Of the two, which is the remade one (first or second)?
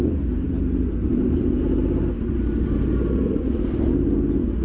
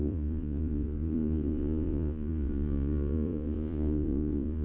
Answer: second